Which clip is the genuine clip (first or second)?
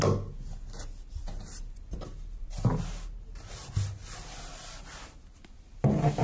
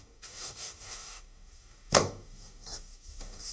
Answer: first